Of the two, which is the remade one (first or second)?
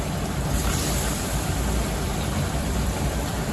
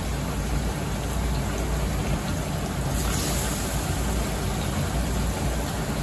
first